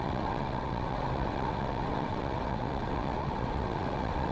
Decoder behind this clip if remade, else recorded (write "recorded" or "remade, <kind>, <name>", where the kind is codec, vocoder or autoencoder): remade, vocoder, WaveNeXt